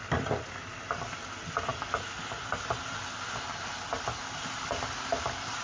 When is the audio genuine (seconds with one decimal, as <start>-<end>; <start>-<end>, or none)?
1.7-5.1

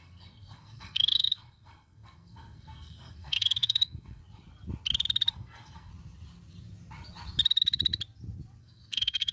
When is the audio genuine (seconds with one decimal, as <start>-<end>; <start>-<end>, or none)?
4.2-5.3; 5.9-8.6

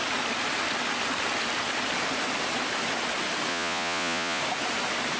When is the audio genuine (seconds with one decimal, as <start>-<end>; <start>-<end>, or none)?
0.0-3.5; 4.4-5.2

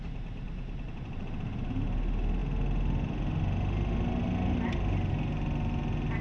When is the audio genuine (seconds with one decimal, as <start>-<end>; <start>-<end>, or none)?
0.0-6.2

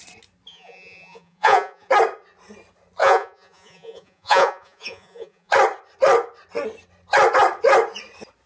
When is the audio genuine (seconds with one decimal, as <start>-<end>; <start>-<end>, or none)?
0.0-0.5; 1.9-3.0; 5.5-8.5

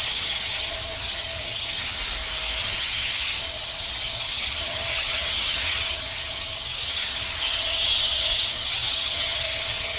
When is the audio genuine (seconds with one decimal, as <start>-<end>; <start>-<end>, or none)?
2.0-2.6

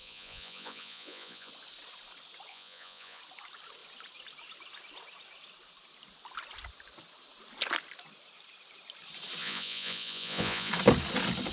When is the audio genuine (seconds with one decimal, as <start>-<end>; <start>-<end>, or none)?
1.5-2.5; 3.2-9.4; 10.7-11.5